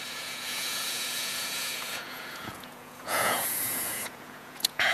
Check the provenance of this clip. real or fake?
fake